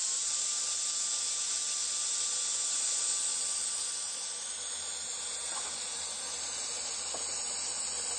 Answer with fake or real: real